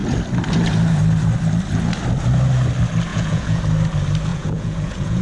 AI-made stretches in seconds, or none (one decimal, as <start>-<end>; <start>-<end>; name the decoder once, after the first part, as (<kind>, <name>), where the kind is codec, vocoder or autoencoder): 3.1-3.6 (vocoder, Vocos); 4.3-5.2